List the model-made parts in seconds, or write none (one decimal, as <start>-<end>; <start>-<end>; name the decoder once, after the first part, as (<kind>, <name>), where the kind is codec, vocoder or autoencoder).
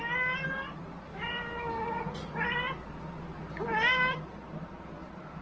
1.1-2.0 (codec, DAC)